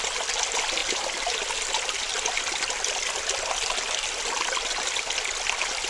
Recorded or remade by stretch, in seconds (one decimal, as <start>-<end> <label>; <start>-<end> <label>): 0.0-5.9 recorded